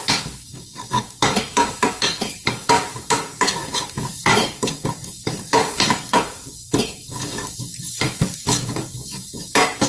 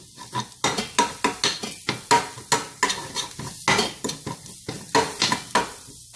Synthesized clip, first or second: first